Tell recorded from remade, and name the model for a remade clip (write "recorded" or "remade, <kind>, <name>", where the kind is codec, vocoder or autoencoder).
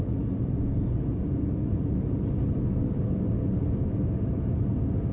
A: recorded